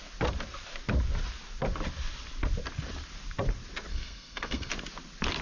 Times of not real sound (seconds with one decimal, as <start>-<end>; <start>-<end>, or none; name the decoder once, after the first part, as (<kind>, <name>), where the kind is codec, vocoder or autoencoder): 3.9-4.7 (codec, SNAC)